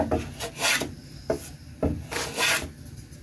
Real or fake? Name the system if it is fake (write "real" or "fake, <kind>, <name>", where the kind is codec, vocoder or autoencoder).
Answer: real